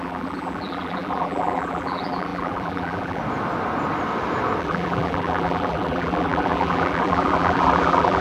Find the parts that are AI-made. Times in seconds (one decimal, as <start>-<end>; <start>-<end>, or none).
0.0-3.2; 4.6-8.2